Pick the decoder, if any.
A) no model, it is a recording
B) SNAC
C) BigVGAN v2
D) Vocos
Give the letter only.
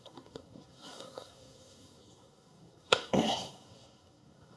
B